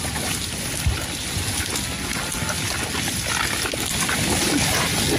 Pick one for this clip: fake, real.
real